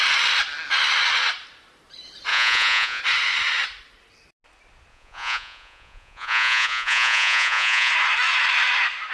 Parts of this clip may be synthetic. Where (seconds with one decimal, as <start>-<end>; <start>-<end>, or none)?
2.3-3.0; 4.9-7.9